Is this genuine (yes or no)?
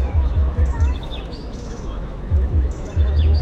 no